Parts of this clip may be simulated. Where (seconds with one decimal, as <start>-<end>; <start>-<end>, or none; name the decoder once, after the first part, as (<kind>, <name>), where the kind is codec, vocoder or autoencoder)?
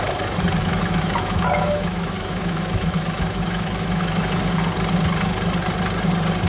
0.6-4.4 (autoencoder, DAC-VAE)